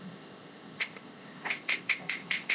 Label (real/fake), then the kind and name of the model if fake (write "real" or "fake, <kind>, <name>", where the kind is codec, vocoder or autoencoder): fake, codec, ZipCodec